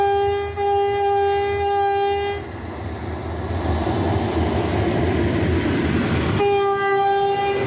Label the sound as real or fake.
real